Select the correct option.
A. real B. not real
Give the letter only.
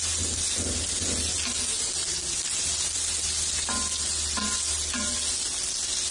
A